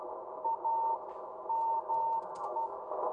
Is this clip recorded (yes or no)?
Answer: yes